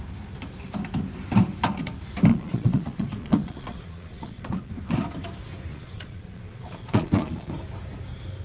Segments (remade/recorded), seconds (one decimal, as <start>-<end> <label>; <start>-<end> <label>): 0.0-2.3 recorded; 2.3-4.7 remade; 4.7-5.7 recorded; 5.7-7.5 remade; 7.5-8.4 recorded